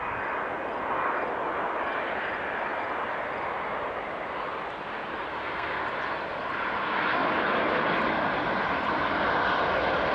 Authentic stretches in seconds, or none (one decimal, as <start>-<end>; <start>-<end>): 0.0-5.3; 5.8-10.1